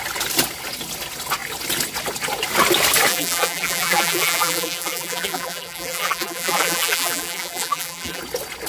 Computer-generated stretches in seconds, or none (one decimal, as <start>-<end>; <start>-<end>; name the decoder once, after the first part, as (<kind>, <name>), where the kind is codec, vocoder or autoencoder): 3.1-8.2 (vocoder, BigVGAN v2)